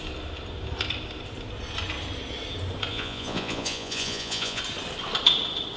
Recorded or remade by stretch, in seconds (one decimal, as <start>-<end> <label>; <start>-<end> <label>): 0.0-2.9 recorded; 2.9-4.6 remade; 4.6-5.8 recorded